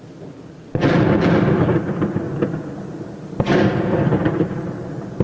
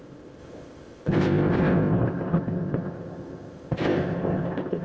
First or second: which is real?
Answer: first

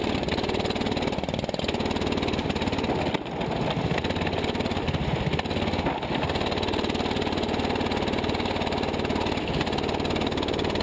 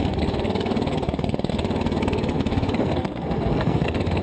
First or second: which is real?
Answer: first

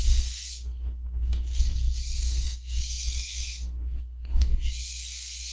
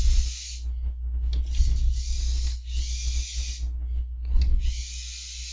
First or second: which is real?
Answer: second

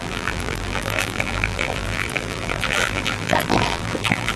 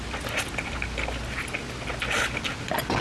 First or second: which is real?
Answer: second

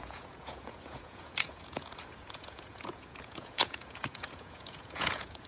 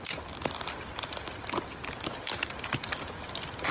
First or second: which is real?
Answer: second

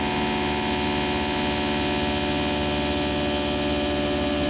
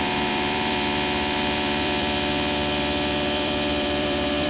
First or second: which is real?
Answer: first